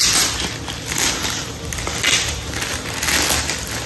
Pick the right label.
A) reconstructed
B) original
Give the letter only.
B